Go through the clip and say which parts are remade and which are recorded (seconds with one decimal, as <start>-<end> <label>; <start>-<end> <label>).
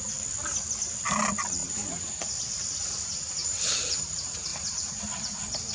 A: 0.0-1.6 recorded; 1.6-2.3 remade; 2.3-3.4 recorded; 3.4-4.1 remade; 4.1-4.5 recorded; 4.5-5.0 remade; 5.0-5.7 recorded